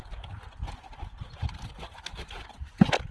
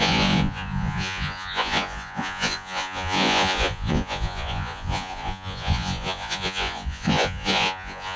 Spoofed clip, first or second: second